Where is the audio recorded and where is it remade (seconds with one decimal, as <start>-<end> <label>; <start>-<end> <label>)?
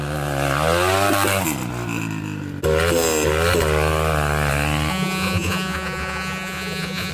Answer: 0.0-4.9 recorded; 4.9-7.1 remade